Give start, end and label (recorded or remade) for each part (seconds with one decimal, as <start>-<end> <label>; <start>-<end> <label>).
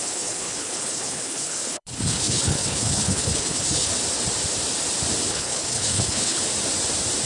0.0-3.9 remade; 3.9-5.3 recorded; 5.3-6.4 remade; 6.4-7.3 recorded